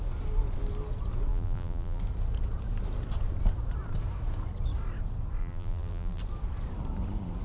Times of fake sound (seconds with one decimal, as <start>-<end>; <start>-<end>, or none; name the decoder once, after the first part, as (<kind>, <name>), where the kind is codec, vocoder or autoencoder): 1.3-2.0 (vocoder, BigVGAN v2); 5.4-6.2